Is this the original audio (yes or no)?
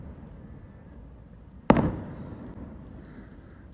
yes